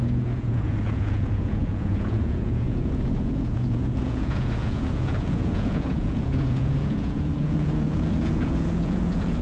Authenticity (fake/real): fake